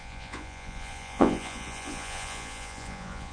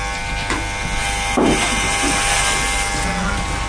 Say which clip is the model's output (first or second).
first